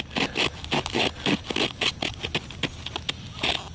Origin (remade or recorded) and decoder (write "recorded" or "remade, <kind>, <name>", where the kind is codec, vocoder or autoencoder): recorded